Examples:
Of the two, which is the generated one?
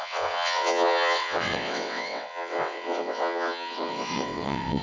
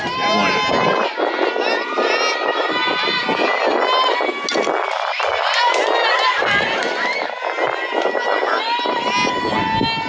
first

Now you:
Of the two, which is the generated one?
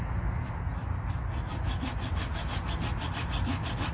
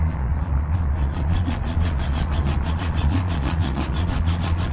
second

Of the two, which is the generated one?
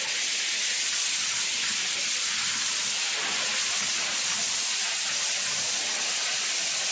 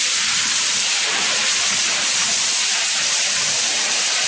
second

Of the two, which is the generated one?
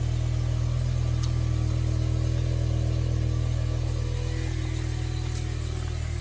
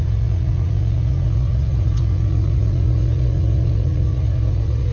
second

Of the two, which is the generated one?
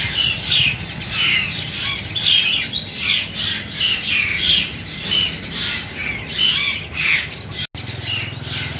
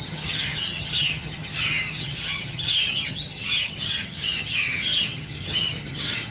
second